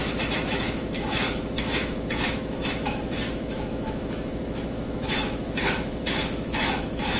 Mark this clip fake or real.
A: fake